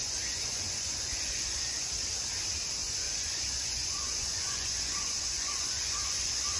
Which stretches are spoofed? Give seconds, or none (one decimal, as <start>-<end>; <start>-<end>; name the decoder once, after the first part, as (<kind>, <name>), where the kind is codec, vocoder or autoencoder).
0.0-1.9 (vocoder, Vocos); 2.8-6.6